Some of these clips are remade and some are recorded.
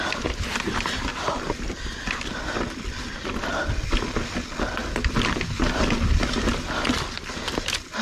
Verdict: recorded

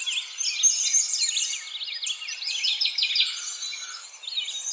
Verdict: recorded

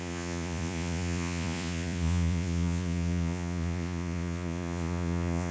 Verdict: remade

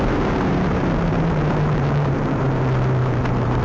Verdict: remade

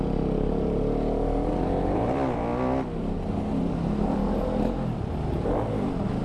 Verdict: recorded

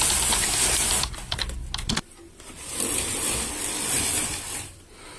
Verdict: recorded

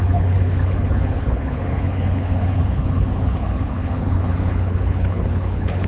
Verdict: remade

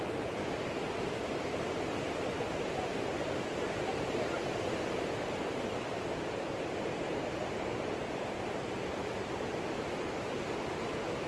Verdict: recorded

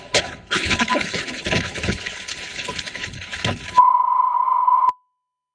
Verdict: remade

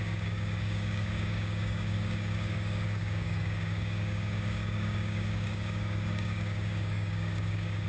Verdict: remade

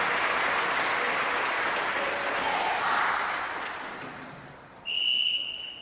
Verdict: recorded